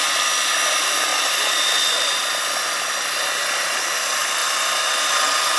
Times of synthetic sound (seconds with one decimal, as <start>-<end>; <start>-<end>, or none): 1.1-3.8; 4.4-5.6